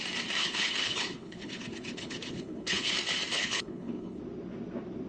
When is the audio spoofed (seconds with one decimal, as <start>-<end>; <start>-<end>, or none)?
0.4-2.9; 3.3-4.2